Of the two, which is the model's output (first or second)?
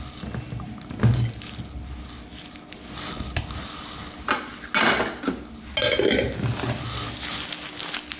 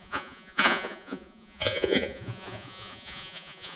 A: second